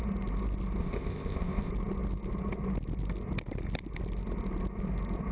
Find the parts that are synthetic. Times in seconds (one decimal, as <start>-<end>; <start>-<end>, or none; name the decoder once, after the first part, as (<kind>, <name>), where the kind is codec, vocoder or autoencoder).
0.8-1.7 (codec, ZipCodec)